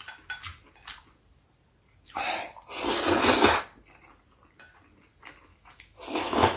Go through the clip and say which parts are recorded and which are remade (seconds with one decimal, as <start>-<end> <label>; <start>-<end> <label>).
0.0-5.5 recorded; 5.5-6.6 remade

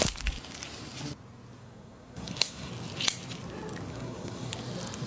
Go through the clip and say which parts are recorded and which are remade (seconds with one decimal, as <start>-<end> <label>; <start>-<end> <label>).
0.0-1.6 recorded; 1.6-2.7 remade; 2.7-3.9 recorded; 3.9-4.5 remade; 4.5-5.1 recorded

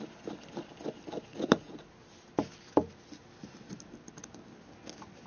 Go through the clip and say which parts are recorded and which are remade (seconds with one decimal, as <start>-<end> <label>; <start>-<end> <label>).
0.0-1.3 recorded; 1.3-1.9 remade; 1.9-5.3 recorded

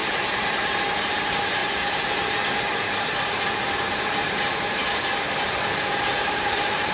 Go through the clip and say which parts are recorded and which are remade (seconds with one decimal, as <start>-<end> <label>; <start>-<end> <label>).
0.0-6.9 remade

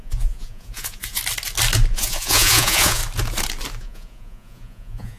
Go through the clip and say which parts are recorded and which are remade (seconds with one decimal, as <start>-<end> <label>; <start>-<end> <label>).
0.0-1.2 remade; 1.2-1.9 recorded; 1.9-3.0 remade; 3.0-3.8 recorded; 3.8-5.2 remade